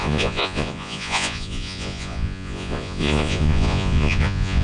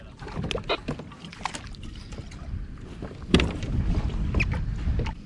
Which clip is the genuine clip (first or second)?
second